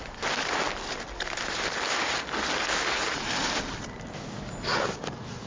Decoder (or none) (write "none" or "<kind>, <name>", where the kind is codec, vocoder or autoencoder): none